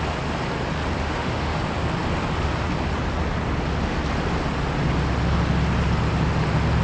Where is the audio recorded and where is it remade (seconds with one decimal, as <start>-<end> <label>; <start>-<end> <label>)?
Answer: 0.0-1.0 recorded; 1.0-1.6 remade; 1.6-6.8 recorded